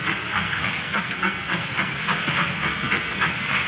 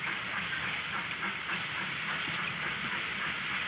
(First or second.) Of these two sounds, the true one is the second